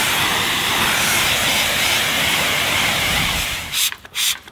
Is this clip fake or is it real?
fake